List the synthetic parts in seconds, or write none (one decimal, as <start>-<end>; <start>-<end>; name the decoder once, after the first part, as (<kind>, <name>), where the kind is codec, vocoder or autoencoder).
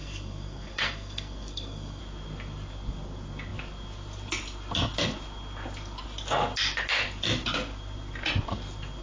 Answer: 0.0-2.0 (codec, SNAC)